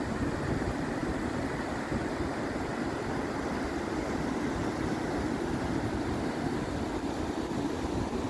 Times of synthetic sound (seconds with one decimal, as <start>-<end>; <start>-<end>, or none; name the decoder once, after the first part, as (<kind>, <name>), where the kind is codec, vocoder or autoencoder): none